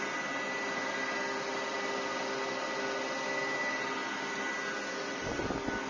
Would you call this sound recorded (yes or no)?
yes